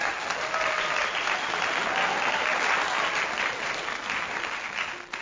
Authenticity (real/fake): real